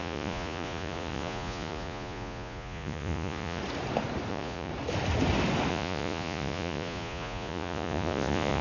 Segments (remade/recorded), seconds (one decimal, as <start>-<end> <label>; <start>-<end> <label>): 0.0-3.6 remade; 3.6-4.3 recorded; 4.3-4.7 remade; 4.7-5.7 recorded; 5.7-8.6 remade